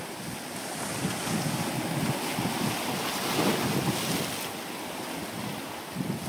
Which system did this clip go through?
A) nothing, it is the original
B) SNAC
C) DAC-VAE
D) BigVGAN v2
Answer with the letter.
A